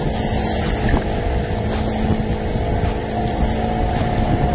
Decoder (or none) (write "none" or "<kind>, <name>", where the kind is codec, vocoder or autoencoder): none